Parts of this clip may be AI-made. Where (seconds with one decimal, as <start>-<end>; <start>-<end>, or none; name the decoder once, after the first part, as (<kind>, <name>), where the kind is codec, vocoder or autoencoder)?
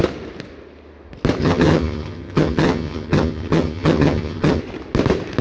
1.4-4.6 (vocoder, HiFi-GAN)